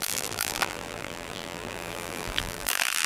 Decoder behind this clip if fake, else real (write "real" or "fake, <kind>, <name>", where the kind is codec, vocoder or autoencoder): fake, vocoder, BigVGAN v2